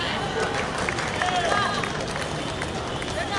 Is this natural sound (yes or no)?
yes